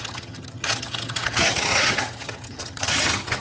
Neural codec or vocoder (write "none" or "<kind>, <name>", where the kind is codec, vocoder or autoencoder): vocoder, HiFi-GAN